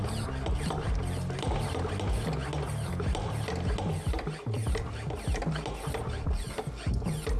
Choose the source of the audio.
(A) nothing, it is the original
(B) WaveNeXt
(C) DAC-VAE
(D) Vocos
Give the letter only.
A